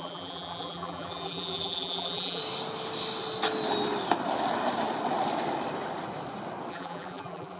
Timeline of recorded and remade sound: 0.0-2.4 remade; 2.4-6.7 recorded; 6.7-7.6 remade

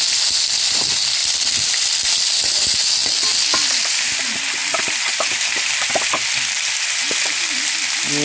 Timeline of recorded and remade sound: 0.0-1.2 recorded; 1.2-2.1 remade; 2.1-4.6 recorded; 4.6-6.0 remade; 6.0-8.2 recorded

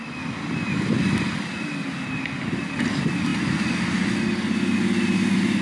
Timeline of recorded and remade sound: 0.0-5.6 recorded

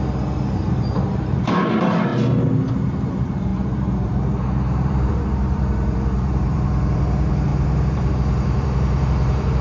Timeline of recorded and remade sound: 0.0-2.1 remade; 2.1-2.7 recorded; 2.7-9.6 remade

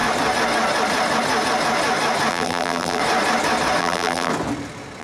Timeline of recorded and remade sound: 0.0-2.3 recorded; 2.3-3.0 remade; 3.0-3.8 recorded; 3.8-4.3 remade; 4.3-5.0 recorded

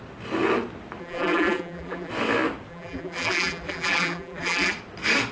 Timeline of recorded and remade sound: 0.0-1.0 recorded; 1.0-2.1 remade; 2.1-2.7 recorded; 2.7-4.7 remade; 4.7-5.3 recorded

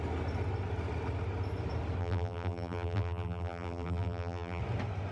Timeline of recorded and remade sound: 0.0-2.0 recorded; 2.0-4.6 remade; 4.6-5.1 recorded

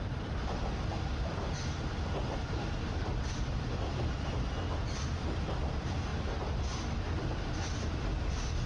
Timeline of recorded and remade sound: 0.0-6.1 remade; 6.1-7.2 recorded; 7.2-8.7 remade